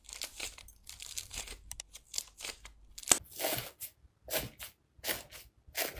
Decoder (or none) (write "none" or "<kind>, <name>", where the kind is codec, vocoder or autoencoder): none